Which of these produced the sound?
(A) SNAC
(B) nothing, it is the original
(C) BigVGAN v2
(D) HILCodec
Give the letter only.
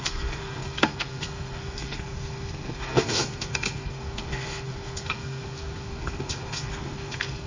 A